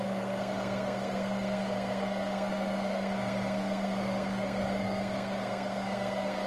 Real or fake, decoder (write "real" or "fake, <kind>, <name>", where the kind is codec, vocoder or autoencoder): fake, codec, SNAC